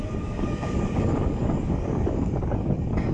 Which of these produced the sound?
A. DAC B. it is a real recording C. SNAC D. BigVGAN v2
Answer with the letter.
A